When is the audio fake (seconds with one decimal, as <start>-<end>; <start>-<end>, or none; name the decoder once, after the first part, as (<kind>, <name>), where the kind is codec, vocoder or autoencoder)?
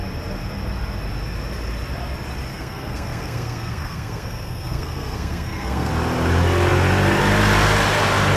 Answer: 2.5-5.9 (codec, SNAC)